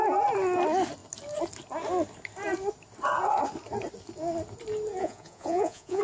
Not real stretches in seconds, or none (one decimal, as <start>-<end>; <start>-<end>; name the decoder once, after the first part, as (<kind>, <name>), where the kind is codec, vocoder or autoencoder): 5.0-6.0 (vocoder, Vocos)